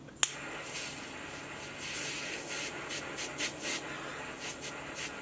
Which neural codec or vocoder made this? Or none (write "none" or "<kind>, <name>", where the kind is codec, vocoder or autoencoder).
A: none